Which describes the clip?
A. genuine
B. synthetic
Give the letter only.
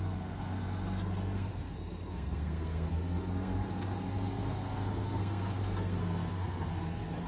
B